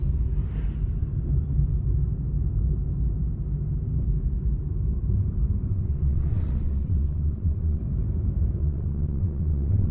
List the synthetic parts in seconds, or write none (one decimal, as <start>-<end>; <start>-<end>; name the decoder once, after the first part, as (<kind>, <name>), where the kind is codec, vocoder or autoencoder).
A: 5.7-7.8 (vocoder, WaveNeXt); 8.6-9.9